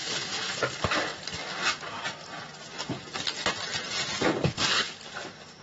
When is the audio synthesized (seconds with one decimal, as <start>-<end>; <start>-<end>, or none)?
0.0-0.5